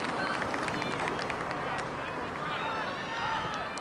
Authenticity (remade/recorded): recorded